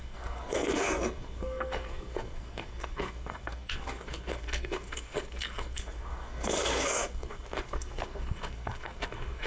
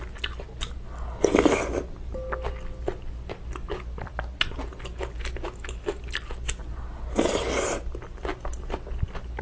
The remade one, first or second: first